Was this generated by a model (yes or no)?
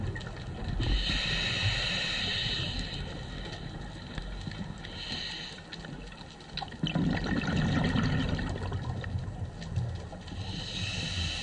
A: no